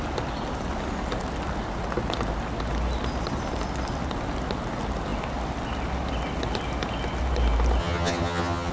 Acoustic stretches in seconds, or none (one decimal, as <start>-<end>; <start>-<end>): 0.0-7.8